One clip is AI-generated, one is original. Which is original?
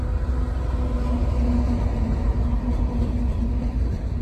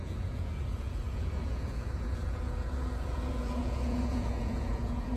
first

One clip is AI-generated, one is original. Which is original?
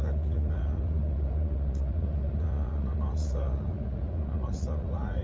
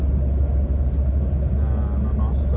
second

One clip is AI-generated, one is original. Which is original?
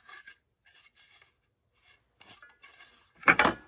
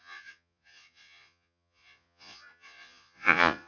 first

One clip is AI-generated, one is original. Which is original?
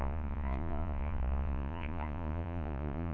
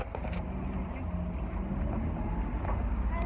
second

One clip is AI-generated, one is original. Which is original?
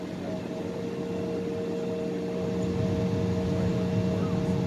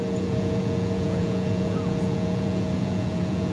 first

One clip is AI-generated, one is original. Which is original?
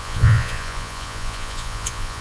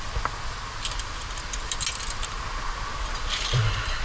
second